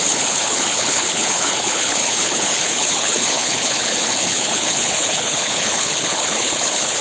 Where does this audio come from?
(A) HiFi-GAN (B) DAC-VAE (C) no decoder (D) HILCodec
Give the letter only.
D